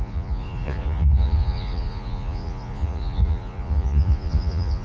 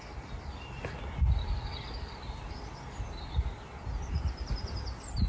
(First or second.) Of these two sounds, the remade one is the first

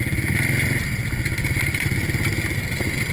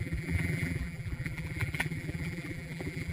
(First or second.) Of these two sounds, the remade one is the second